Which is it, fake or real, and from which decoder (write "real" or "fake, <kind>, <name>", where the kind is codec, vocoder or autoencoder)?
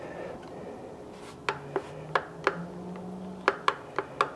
real